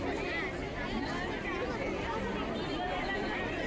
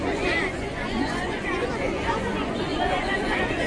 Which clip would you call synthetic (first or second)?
second